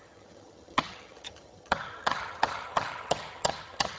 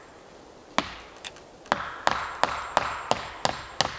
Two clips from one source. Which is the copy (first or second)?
first